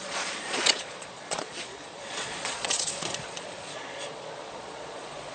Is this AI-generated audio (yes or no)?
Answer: yes